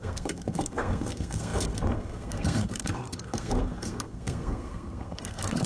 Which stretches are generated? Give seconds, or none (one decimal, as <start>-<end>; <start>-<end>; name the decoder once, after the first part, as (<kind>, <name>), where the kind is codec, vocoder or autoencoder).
0.0-5.7 (codec, SNAC)